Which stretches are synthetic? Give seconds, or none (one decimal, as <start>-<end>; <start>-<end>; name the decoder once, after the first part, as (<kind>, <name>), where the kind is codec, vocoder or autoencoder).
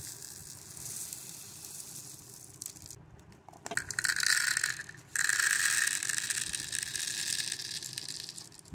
none